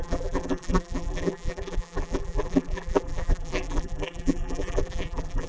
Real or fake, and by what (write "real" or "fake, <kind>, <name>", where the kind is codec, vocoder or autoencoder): fake, vocoder, BigVGAN v2